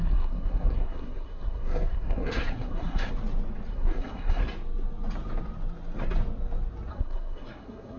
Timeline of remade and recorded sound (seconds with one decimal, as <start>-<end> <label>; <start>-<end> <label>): 0.0-3.1 remade; 3.1-3.7 recorded; 3.7-4.4 remade; 4.4-6.9 recorded; 6.9-8.0 remade